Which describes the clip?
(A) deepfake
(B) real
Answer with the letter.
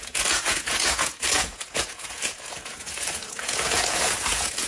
A